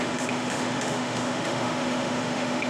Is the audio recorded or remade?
remade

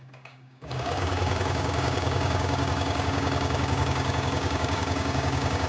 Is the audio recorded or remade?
remade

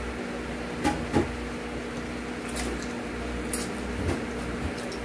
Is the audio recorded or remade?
recorded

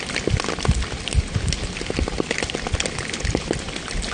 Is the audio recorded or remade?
recorded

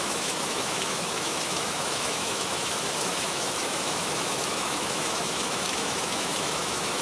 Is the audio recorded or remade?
remade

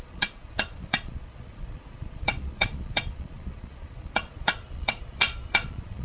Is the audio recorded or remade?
remade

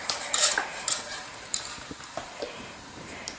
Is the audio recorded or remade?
remade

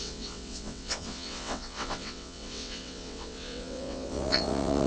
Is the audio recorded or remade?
remade